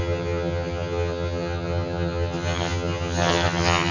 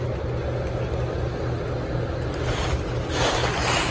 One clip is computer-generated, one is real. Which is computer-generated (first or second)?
first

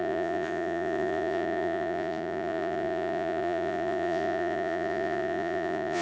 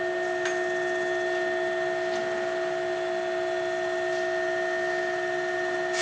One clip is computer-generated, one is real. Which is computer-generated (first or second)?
first